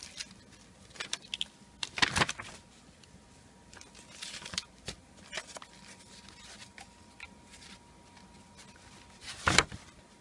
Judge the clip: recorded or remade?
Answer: recorded